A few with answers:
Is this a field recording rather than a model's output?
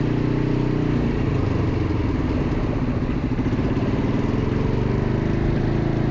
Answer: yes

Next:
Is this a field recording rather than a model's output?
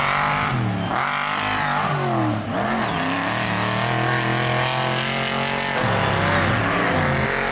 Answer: yes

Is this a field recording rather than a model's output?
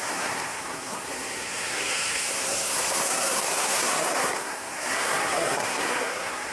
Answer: no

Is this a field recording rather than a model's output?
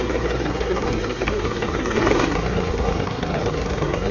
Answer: no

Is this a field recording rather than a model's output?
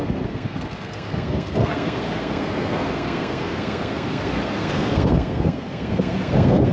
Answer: no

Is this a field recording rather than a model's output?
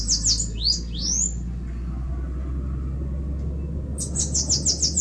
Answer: yes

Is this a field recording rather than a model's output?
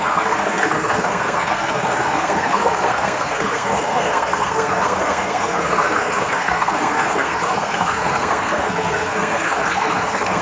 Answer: no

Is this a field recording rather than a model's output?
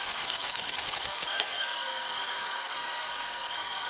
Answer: no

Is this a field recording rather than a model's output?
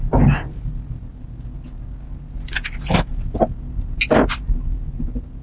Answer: yes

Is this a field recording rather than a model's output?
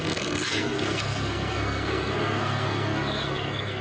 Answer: no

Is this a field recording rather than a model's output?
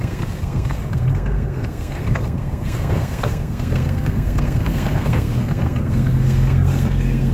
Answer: no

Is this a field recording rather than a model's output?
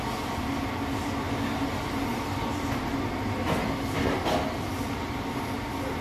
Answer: yes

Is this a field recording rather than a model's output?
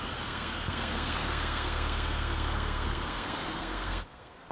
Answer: no